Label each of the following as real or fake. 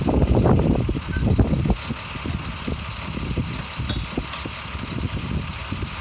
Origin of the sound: real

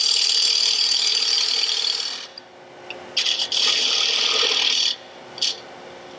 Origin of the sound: real